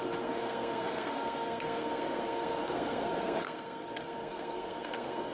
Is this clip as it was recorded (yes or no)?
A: no